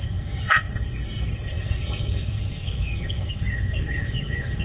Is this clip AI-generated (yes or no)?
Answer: yes